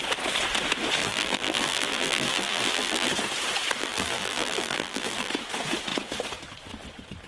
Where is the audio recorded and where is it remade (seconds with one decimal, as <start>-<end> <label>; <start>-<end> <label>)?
0.0-1.0 recorded; 1.0-3.1 remade; 3.1-3.8 recorded; 3.8-5.3 remade; 5.3-7.3 recorded